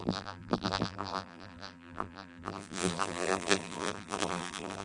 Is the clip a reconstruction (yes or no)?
yes